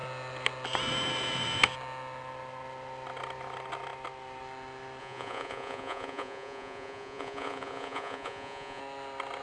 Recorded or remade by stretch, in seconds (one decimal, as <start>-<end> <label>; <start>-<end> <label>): 0.0-5.0 recorded; 5.0-8.8 remade; 8.8-9.4 recorded